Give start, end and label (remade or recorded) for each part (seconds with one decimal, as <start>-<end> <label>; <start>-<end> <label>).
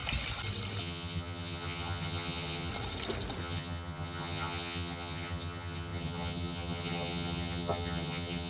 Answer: 0.0-0.8 recorded; 0.8-2.7 remade; 2.7-3.4 recorded; 3.4-8.5 remade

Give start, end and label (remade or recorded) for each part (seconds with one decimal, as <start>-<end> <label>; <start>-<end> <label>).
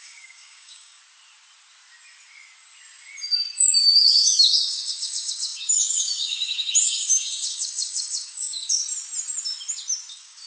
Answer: 0.0-1.0 remade; 1.0-3.8 recorded; 3.8-8.8 remade; 8.8-10.1 recorded; 10.1-10.5 remade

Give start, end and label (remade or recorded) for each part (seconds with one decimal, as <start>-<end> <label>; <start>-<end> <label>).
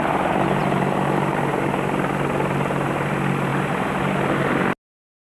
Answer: 0.0-5.2 recorded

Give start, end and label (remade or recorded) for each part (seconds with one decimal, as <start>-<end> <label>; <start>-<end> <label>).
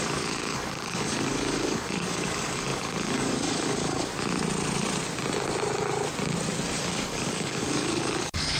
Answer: 0.0-4.1 remade; 4.1-6.8 recorded; 6.8-8.6 remade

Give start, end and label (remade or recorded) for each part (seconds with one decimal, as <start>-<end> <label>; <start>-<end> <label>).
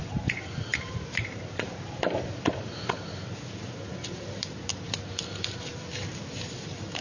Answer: 0.0-7.0 recorded